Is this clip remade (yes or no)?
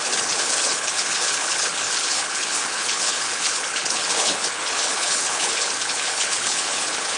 yes